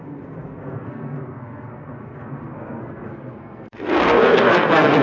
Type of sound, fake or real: fake